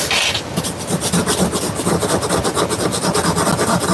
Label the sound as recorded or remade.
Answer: recorded